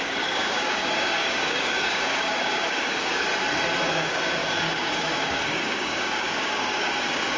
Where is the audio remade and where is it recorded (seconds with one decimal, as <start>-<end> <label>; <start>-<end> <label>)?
0.0-3.3 remade; 3.3-3.9 recorded; 3.9-7.4 remade